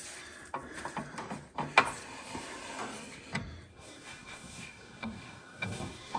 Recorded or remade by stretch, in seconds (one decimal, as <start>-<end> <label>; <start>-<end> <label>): 0.0-3.7 recorded; 3.7-6.2 remade